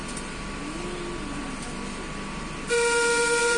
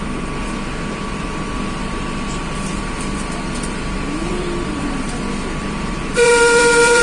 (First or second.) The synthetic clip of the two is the second